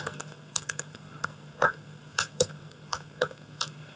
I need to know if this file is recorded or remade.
remade